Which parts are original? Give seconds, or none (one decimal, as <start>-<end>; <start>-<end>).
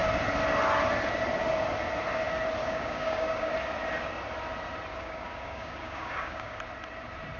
0.0-2.6; 3.5-4.9; 6.6-7.4